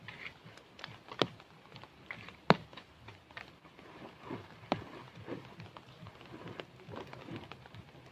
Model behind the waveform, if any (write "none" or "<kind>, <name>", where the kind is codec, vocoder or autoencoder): none